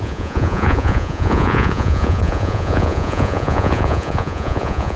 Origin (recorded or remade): remade